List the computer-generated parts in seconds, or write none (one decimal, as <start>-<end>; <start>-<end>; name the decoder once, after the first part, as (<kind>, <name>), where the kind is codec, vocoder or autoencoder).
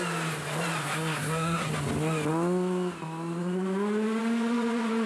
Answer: 0.8-1.7 (codec, SNAC)